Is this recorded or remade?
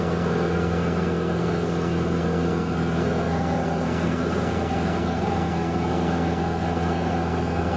remade